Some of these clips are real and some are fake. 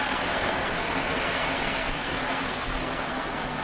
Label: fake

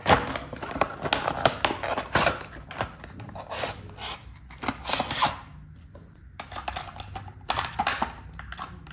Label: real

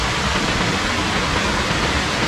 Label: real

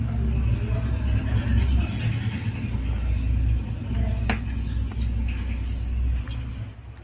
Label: real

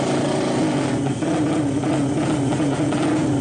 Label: real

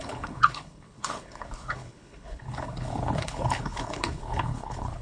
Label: fake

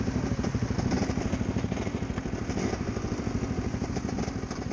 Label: real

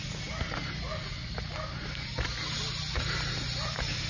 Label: real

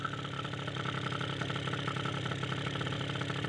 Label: real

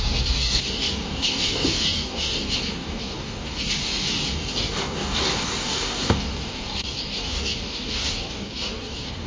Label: fake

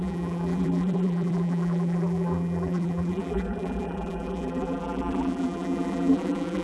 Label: fake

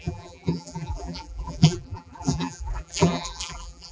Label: fake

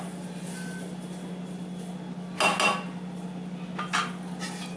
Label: real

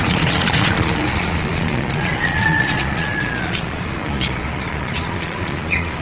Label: fake